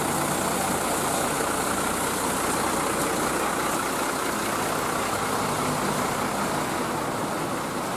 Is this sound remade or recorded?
recorded